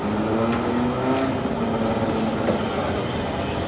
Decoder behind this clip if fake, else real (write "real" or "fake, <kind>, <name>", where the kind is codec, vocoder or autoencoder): real